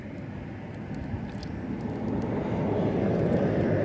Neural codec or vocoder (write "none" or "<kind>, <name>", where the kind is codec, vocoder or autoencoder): none